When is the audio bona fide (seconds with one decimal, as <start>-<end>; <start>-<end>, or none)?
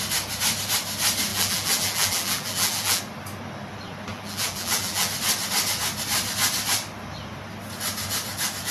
0.0-1.3; 3.0-4.1; 5.1-8.7